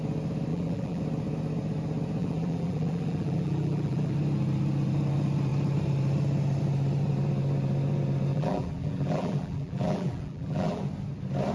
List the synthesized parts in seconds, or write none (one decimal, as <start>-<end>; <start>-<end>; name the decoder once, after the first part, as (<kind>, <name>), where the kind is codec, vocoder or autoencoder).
0.5-1.0 (vocoder, BigVGAN v2); 2.2-4.1; 8.3-10.8

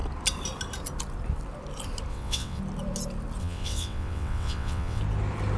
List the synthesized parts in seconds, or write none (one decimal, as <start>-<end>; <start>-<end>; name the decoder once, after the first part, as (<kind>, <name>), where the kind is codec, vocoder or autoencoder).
2.1-2.6 (vocoder, WaveNeXt); 3.4-5.0

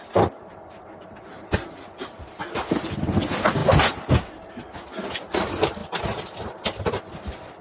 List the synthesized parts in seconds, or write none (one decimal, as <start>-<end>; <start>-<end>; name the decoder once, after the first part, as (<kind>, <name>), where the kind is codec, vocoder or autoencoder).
none

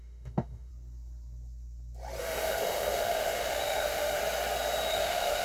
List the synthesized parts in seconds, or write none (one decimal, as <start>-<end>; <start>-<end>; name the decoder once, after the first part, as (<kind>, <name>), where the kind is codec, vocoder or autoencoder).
0.0-0.7 (autoencoder, DAC-VAE); 2.2-4.2; 4.9-5.4